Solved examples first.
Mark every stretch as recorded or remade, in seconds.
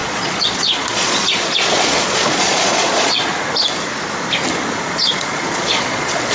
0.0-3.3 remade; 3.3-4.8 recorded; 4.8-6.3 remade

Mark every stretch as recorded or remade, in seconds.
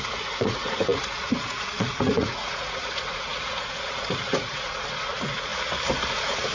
0.0-5.5 remade; 5.5-6.1 recorded; 6.1-6.5 remade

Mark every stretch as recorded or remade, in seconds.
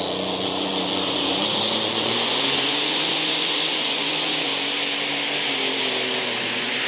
0.0-4.5 remade; 4.5-6.4 recorded; 6.4-6.9 remade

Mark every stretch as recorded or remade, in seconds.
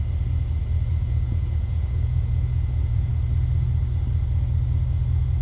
0.0-0.9 recorded; 0.9-3.1 remade; 3.1-5.4 recorded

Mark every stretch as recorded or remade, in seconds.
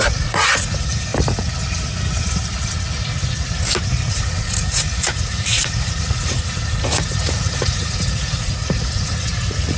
0.0-1.1 remade; 1.1-4.1 recorded; 4.1-9.8 remade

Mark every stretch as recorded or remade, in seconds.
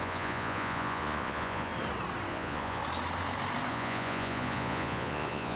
0.0-1.7 remade; 1.7-2.3 recorded; 2.3-2.8 remade; 2.8-3.7 recorded; 3.7-5.6 remade